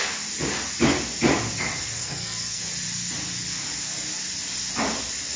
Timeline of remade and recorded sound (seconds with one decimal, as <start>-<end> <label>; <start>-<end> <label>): 0.0-2.0 recorded; 2.0-2.6 remade; 2.6-5.4 recorded